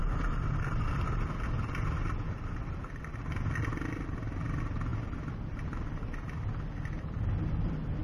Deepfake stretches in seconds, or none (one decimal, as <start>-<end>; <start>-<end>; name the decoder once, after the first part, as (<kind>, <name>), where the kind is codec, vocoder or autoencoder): none